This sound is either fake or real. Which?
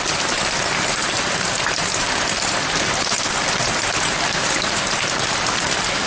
real